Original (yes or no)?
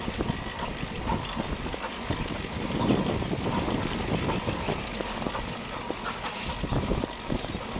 yes